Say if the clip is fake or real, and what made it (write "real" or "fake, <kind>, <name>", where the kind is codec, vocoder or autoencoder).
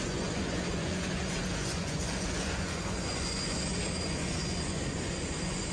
fake, vocoder, Vocos